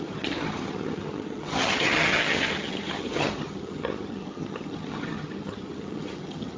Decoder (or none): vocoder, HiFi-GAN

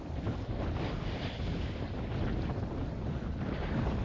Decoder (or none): none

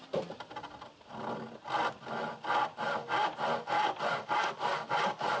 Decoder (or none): none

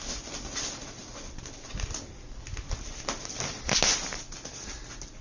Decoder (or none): none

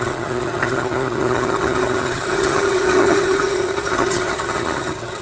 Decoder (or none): vocoder, HiFi-GAN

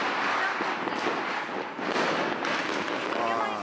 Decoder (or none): none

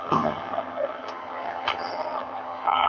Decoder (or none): vocoder, HiFi-GAN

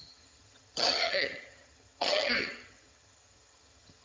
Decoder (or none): vocoder, HiFi-GAN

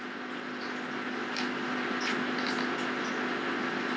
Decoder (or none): none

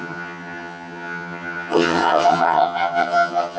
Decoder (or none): vocoder, HiFi-GAN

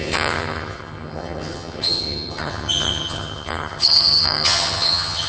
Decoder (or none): vocoder, HiFi-GAN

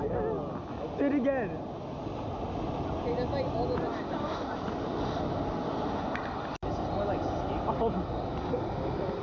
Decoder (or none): none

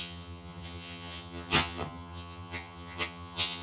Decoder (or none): vocoder, HiFi-GAN